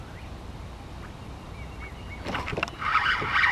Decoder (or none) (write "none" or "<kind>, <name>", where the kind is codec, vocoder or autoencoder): none